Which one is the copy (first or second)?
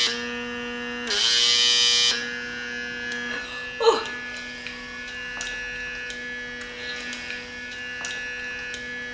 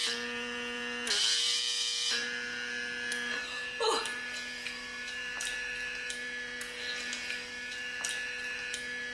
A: second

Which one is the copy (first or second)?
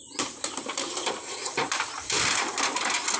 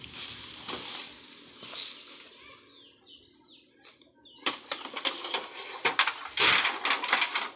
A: first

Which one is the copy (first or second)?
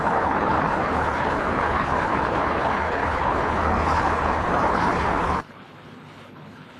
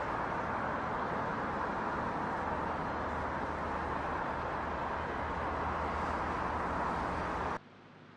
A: first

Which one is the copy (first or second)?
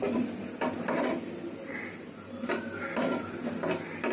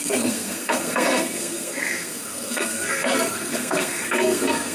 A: second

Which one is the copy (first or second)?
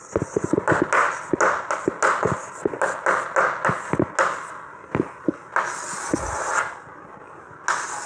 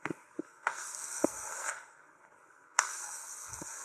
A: second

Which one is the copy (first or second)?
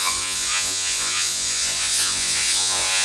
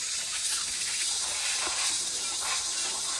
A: first